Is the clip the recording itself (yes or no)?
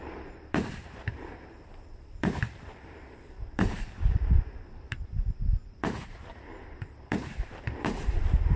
no